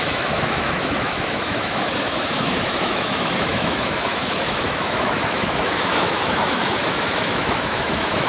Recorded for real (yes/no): no